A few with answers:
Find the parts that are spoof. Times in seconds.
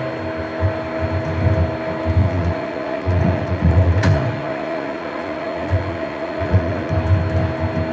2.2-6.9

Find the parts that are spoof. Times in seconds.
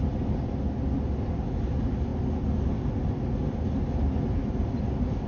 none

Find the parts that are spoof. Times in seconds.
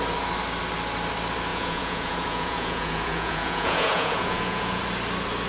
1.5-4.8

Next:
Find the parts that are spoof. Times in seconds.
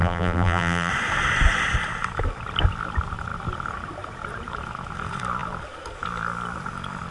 0.0-0.9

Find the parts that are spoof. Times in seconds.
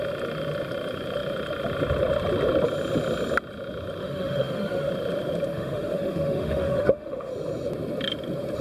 4.0-4.9; 5.5-7.3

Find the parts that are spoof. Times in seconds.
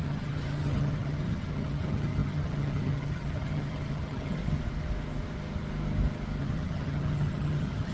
0.0-4.4; 6.4-7.9